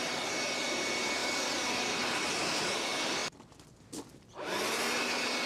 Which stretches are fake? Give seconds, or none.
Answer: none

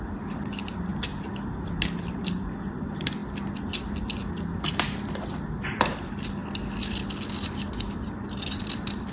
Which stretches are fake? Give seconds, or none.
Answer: 0.0-0.9 (vocoder, BigVGAN v2); 2.2-3.2; 4.7-6.4; 8.6-9.1

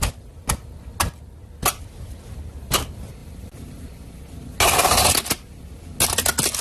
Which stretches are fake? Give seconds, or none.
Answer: 3.2-4.2 (vocoder, BigVGAN v2)

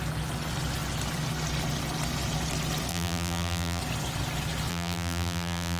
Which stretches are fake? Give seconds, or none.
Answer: 2.9-3.8 (vocoder, BigVGAN v2); 4.7-5.8

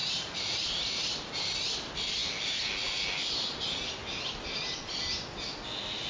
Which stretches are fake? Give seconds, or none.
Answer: 0.0-1.3 (vocoder, BigVGAN v2)

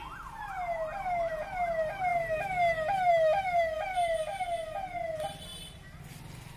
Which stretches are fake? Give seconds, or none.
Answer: none